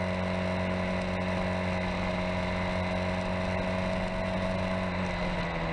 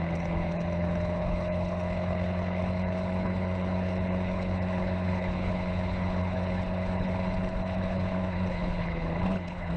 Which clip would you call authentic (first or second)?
first